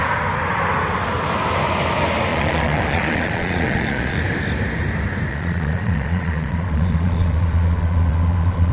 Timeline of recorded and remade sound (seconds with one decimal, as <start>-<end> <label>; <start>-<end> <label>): 0.0-2.3 recorded; 2.3-4.2 remade; 4.2-5.3 recorded; 5.3-8.7 remade